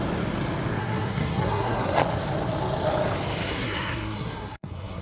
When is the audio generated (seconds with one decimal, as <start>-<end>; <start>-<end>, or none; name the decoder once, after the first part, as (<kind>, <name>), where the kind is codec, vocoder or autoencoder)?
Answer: 0.8-2.0 (codec, SNAC); 3.5-5.0